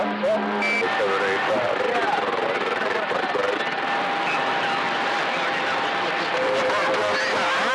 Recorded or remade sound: recorded